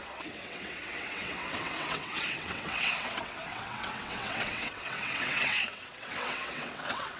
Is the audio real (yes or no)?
no